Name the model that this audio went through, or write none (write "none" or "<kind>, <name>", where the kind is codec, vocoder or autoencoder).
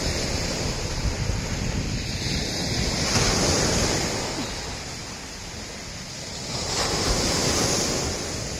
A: none